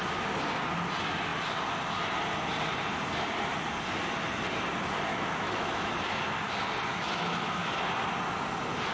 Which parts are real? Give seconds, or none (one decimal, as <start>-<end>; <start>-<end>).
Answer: 0.0-5.1; 5.9-6.9; 7.7-8.9